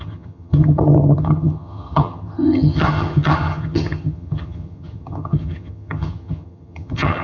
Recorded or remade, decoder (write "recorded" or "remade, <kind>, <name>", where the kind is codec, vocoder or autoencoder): remade, vocoder, HiFi-GAN